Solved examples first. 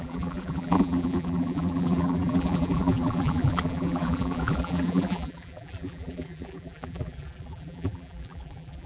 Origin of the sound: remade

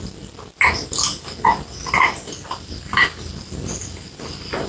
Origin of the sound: recorded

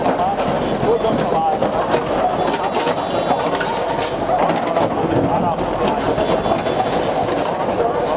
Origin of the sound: recorded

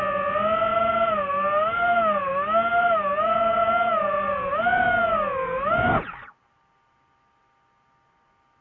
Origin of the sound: recorded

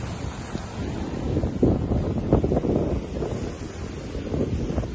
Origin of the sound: recorded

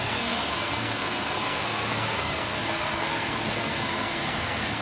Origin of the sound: remade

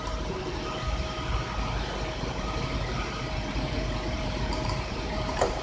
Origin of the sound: remade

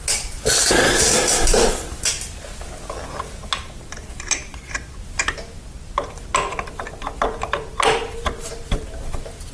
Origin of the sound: recorded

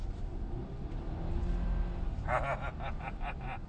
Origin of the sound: recorded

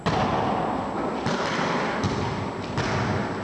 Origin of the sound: recorded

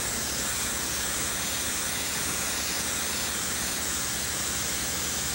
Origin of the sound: remade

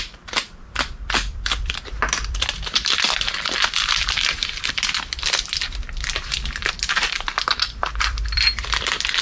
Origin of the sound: remade